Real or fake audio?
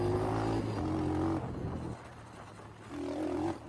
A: real